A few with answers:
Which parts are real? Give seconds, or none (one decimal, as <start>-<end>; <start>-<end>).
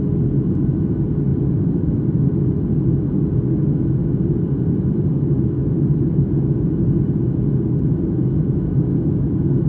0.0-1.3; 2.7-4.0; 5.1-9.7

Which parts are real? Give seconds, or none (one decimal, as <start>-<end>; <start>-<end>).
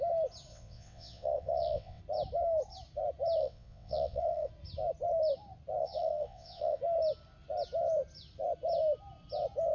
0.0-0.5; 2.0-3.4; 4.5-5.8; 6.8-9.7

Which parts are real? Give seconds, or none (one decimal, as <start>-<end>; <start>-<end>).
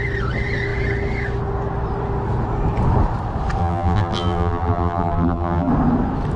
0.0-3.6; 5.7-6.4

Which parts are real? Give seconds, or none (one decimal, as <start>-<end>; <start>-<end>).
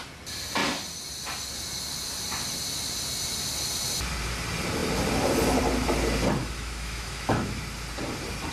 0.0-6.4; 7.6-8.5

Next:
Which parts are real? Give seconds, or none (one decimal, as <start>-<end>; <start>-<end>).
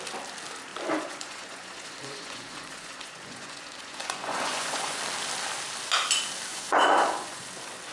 0.0-0.7; 5.0-6.5; 7.5-7.9